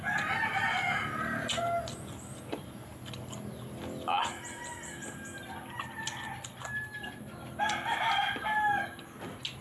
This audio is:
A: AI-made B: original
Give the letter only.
B